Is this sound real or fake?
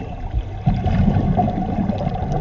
real